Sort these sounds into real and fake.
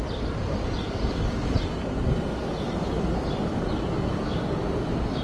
fake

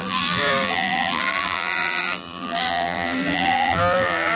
fake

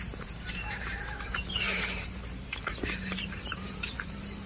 fake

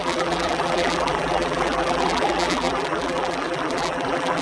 fake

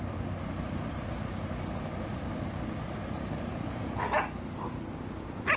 real